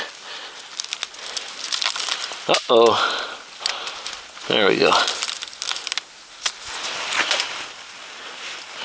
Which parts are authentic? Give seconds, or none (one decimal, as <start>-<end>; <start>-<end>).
0.0-8.8